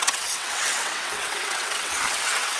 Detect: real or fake fake